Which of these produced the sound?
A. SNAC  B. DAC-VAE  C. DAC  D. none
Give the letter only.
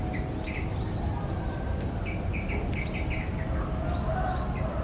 D